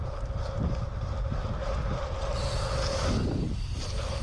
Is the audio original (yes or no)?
yes